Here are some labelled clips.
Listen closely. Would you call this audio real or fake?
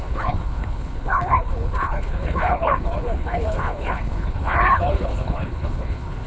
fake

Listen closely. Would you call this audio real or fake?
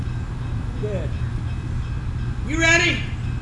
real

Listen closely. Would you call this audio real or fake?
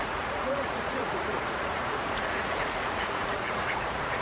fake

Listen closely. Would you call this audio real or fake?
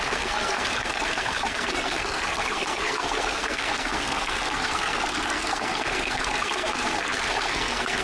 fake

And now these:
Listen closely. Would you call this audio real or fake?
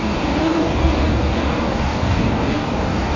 fake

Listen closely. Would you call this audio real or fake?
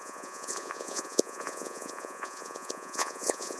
fake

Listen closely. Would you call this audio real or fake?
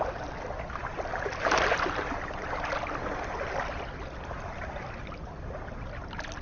real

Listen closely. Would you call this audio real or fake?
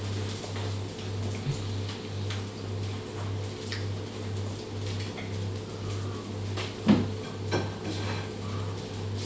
real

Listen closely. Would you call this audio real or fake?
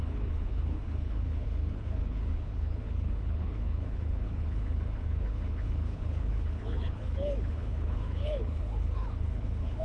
fake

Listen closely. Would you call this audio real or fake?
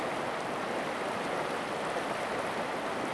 real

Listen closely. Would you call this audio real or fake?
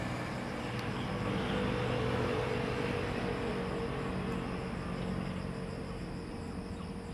real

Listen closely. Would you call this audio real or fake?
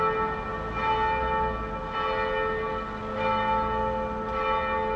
real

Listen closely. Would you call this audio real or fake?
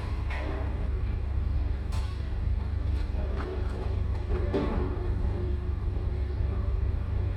fake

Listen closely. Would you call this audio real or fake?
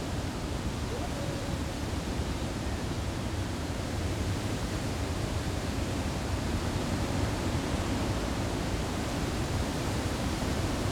fake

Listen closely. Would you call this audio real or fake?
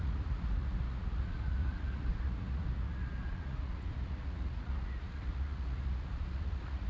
fake